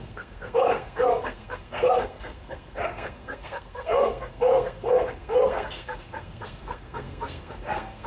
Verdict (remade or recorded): remade